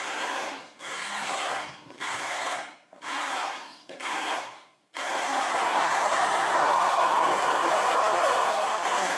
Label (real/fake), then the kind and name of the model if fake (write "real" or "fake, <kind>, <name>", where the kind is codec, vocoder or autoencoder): fake, codec, SNAC